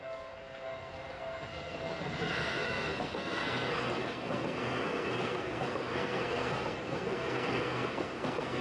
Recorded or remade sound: remade